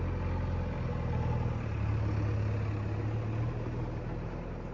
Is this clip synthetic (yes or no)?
no